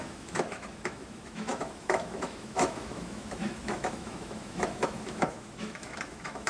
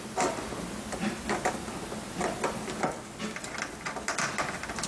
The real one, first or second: second